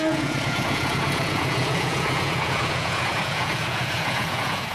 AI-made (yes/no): yes